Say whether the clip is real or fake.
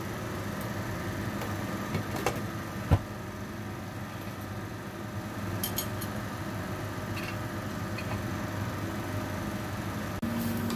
real